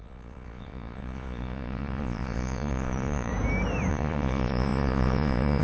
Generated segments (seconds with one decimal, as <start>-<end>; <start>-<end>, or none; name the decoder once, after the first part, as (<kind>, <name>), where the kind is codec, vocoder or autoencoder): 0.0-3.3 (vocoder, Vocos); 3.9-5.6